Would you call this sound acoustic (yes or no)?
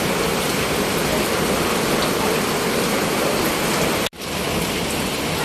yes